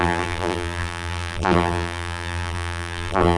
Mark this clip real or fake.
fake